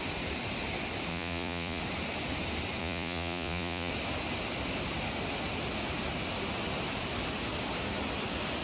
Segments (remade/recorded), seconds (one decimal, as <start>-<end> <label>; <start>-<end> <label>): 0.0-1.1 recorded; 1.1-1.8 remade; 1.8-2.8 recorded; 2.8-3.9 remade; 3.9-8.6 recorded

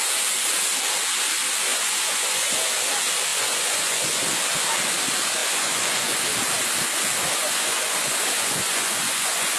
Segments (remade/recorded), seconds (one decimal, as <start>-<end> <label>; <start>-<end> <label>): 0.0-1.7 recorded; 1.7-2.5 remade; 2.5-3.3 recorded; 3.3-4.2 remade; 4.2-5.4 recorded; 5.4-6.2 remade; 6.2-7.4 recorded; 7.4-9.6 remade

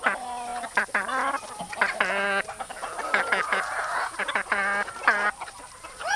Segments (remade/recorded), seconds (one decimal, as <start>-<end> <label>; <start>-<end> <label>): 0.0-6.2 recorded

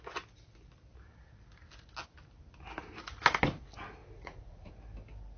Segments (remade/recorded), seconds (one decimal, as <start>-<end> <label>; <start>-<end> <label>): 0.0-4.0 recorded; 4.0-4.7 remade; 4.7-5.4 recorded

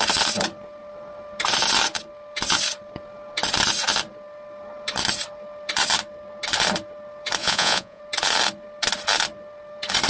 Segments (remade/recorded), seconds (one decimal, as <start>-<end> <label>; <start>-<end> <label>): 0.0-7.4 recorded; 7.4-8.0 remade; 8.0-10.1 recorded

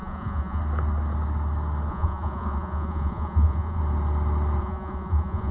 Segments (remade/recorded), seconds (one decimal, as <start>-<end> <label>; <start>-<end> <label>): 0.0-0.6 remade; 0.6-1.9 recorded; 1.9-3.8 remade; 3.8-4.6 recorded; 4.6-5.5 remade